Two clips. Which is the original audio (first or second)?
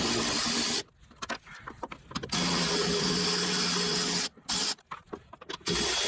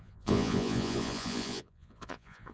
first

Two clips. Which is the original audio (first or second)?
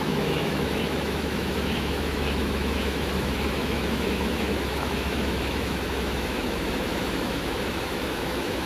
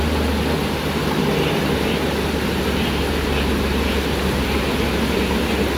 second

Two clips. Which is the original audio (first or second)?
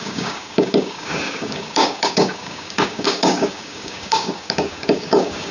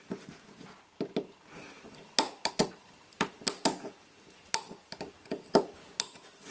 second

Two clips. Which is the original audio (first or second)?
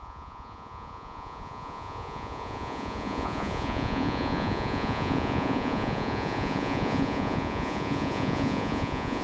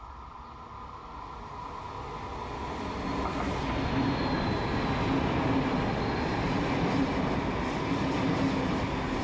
second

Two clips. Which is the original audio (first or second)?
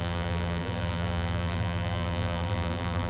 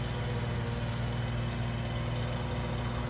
second